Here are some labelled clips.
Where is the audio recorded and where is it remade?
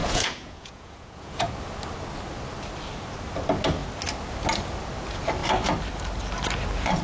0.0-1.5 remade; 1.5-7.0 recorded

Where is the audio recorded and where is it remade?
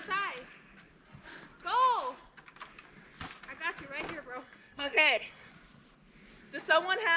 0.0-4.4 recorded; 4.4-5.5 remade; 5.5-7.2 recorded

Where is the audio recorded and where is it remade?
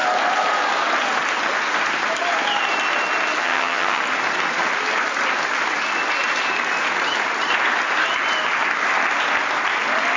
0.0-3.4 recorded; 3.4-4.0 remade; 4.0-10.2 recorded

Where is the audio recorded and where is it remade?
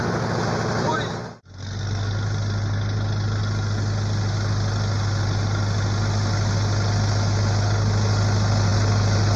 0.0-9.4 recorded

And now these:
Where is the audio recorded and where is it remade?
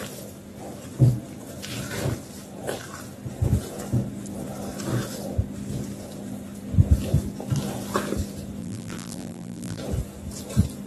0.0-8.6 recorded; 8.6-9.8 remade; 9.8-10.9 recorded